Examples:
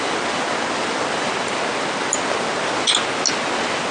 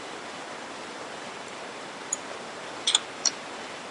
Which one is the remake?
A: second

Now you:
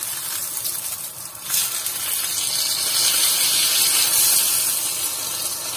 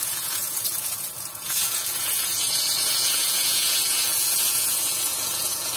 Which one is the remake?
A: second